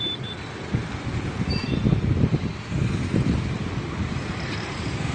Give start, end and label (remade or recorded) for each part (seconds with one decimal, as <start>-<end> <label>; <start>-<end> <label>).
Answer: 0.0-5.1 recorded